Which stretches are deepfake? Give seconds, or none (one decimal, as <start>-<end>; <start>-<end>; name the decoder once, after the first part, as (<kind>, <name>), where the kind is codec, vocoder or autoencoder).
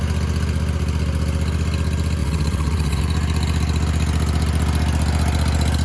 2.2-3.0 (vocoder, WaveNeXt)